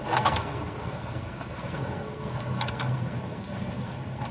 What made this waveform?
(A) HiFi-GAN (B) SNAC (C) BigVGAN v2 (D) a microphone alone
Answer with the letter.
B